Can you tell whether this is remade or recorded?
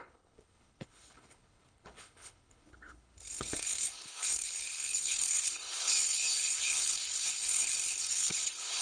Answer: remade